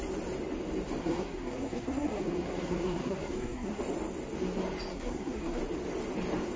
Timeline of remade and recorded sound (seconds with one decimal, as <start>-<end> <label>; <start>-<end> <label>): 0.0-1.0 recorded; 1.0-3.8 remade; 3.8-4.9 recorded; 4.9-5.6 remade; 5.6-6.6 recorded